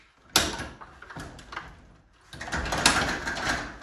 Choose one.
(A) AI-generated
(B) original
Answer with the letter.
B